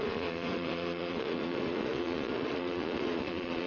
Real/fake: fake